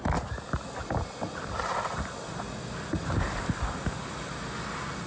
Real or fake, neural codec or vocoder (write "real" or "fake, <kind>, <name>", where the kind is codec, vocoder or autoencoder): real